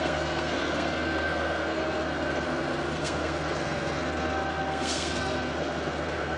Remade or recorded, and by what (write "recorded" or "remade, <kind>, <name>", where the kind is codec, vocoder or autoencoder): remade, codec, SNAC